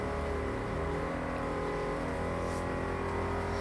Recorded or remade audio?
recorded